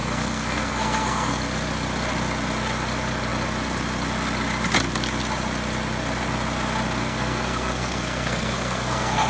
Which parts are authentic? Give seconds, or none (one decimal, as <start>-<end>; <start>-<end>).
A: 1.4-7.0